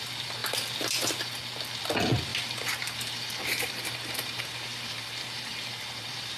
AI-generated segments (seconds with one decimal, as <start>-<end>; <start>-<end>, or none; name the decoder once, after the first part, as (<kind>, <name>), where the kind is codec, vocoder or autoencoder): 2.3-6.4 (vocoder, BigVGAN v2)